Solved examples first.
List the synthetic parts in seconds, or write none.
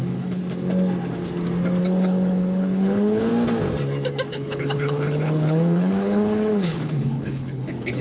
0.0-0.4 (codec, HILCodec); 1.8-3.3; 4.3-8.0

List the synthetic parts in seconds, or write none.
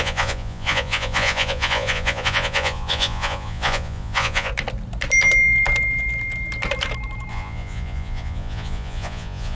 0.0-4.5 (vocoder, Vocos); 7.3-9.5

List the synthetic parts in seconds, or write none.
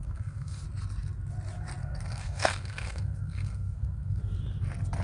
0.0-0.6 (codec, SNAC); 1.8-4.2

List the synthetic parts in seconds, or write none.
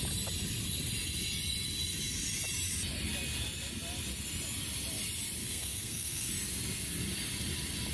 5.4-6.3 (codec, SNAC)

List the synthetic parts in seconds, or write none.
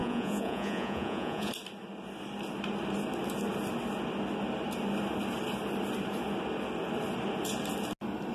0.0-1.5 (vocoder, Vocos)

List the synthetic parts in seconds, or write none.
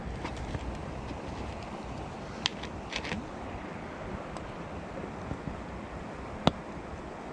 none